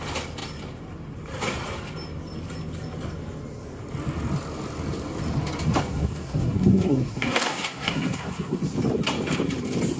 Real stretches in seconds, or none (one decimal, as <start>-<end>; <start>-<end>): 0.0-5.9; 8.6-10.0